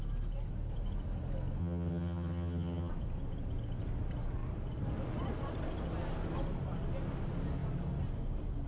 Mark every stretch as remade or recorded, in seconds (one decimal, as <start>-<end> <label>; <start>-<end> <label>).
0.0-1.6 recorded; 1.6-2.9 remade; 2.9-8.7 recorded